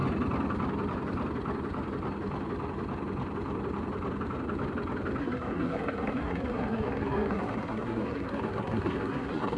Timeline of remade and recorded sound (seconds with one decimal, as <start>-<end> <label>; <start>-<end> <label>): 0.0-5.2 recorded; 5.2-9.6 remade